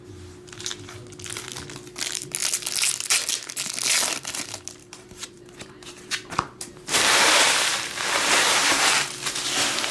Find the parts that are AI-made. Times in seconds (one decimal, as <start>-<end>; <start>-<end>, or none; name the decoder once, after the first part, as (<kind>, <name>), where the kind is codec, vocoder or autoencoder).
4.8-8.8 (vocoder, BigVGAN v2)